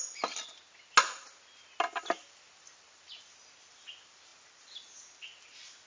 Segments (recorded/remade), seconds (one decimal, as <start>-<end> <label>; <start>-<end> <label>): 0.0-5.9 recorded

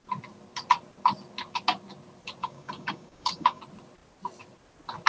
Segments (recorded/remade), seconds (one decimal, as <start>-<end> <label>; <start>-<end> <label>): 0.0-2.4 recorded; 2.4-3.6 remade; 3.6-5.1 recorded